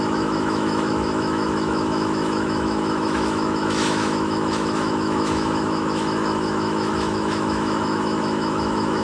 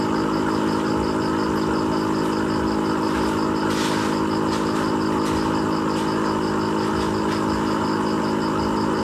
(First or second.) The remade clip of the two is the first